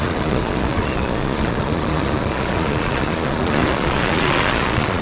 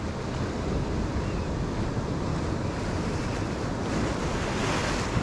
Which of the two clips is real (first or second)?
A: second